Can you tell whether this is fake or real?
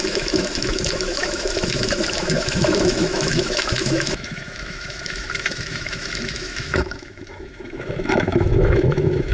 fake